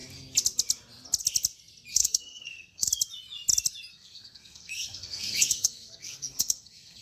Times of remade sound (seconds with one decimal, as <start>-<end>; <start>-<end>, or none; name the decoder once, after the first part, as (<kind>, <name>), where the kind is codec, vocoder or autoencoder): 1.9-2.9 (codec, SNAC); 3.9-7.0